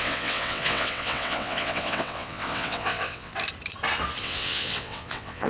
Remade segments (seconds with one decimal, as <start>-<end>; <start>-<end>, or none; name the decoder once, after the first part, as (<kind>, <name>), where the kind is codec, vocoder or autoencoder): 0.0-3.3 (vocoder, WaveNeXt); 4.2-5.5